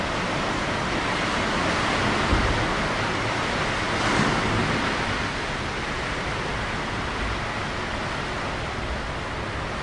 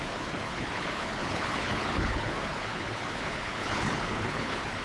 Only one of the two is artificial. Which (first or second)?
second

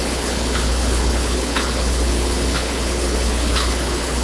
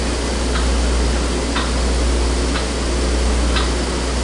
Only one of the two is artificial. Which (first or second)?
first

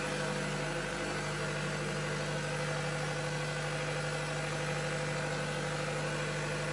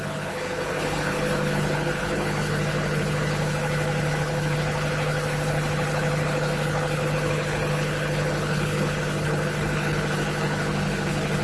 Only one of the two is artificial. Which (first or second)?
second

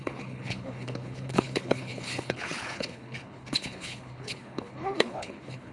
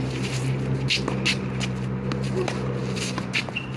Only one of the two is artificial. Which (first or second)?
first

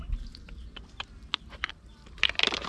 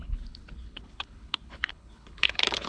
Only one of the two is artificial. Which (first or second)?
second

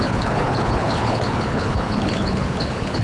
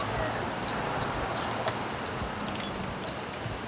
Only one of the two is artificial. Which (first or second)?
first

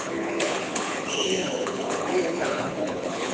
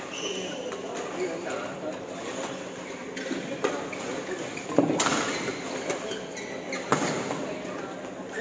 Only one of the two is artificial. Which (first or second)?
first